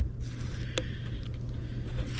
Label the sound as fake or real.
real